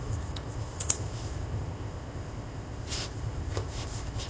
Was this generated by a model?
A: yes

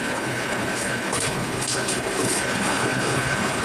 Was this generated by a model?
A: yes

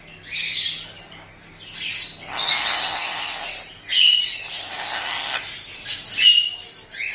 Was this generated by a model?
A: no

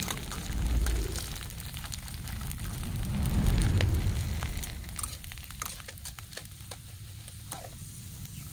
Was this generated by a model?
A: no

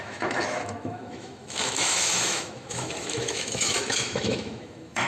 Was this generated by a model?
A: yes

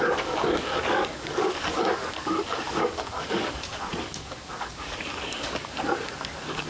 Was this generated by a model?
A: yes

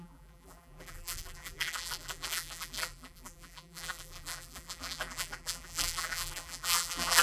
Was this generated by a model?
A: yes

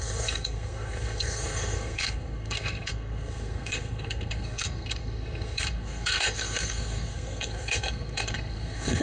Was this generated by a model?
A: yes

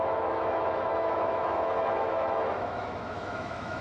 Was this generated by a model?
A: yes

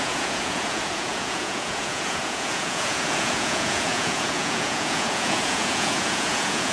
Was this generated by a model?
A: yes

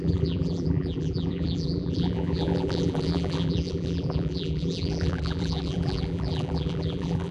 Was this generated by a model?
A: yes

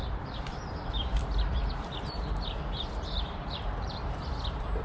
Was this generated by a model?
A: yes